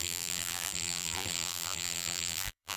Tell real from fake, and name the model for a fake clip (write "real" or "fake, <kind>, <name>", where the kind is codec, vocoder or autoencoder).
fake, vocoder, BigVGAN v2